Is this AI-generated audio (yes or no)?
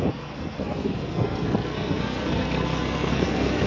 yes